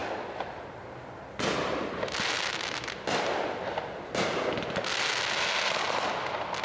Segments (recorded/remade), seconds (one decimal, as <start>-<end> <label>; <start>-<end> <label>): 0.0-6.6 recorded